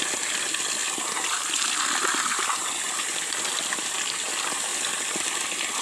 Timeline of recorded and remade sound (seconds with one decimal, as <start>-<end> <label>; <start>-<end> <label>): 0.0-5.8 recorded